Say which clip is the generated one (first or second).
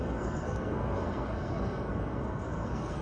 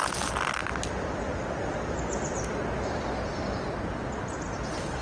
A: first